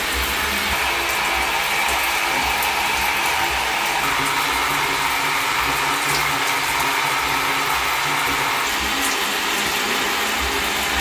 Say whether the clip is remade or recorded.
recorded